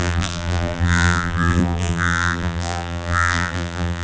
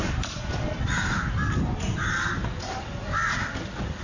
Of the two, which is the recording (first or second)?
second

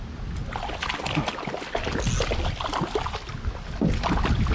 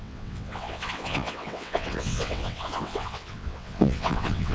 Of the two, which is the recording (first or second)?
first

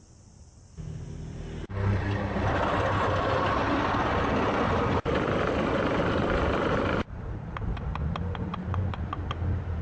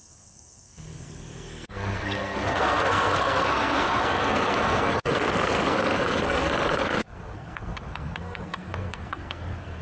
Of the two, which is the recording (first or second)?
first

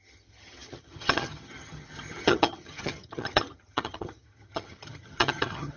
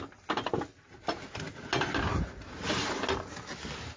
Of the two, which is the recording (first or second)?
second